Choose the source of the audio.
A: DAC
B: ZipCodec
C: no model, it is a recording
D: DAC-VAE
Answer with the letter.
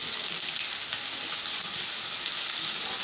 C